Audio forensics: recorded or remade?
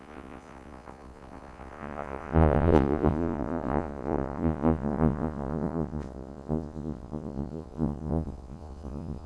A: remade